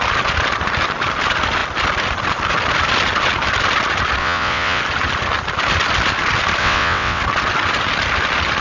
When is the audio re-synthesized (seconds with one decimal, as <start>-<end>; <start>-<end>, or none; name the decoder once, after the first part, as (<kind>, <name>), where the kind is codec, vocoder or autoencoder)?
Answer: 4.2-4.8 (vocoder, WaveNeXt); 6.6-7.2